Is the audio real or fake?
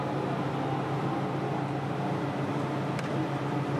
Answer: real